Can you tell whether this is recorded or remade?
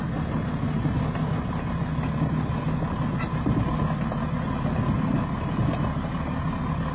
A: recorded